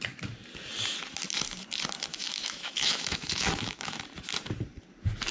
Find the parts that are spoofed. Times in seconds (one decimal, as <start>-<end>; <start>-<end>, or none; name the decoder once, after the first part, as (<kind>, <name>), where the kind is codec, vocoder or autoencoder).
2.1-4.0 (autoencoder, DAC-VAE)